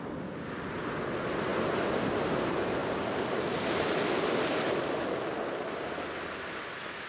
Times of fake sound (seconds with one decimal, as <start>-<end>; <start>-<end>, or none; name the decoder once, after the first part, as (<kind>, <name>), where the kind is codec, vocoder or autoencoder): none